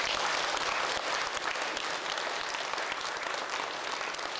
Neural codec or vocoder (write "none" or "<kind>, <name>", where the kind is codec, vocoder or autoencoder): none